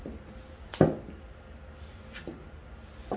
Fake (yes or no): no